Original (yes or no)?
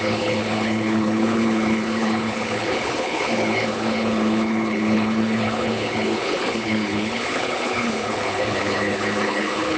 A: no